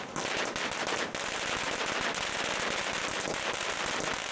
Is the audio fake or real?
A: real